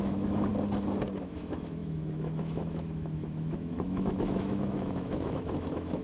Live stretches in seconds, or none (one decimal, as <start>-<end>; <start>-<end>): 0.5-1.2